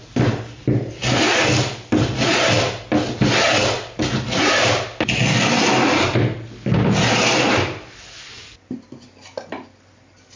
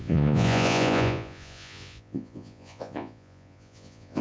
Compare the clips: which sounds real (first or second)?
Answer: first